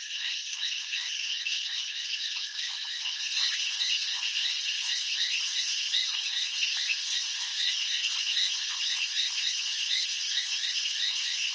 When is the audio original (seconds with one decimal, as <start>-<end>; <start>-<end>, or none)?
none